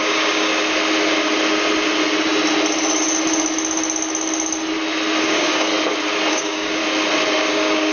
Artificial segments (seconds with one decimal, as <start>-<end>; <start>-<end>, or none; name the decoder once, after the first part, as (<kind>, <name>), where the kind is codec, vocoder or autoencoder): 0.0-0.5 (codec, DAC); 5.2-5.7; 6.3-6.8; 7.5-7.9